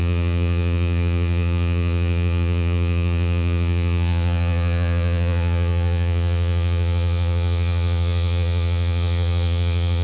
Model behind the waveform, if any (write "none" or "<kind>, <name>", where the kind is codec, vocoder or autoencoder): vocoder, Vocos